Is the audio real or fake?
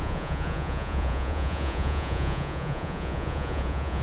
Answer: fake